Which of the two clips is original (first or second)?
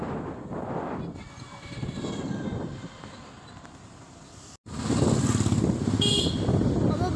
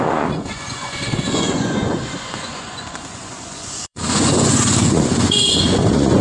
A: first